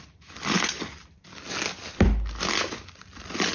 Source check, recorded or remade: recorded